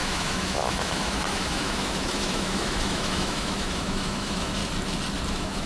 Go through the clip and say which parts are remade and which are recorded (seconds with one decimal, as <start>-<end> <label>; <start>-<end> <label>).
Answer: 0.0-4.6 remade; 4.6-5.3 recorded; 5.3-5.7 remade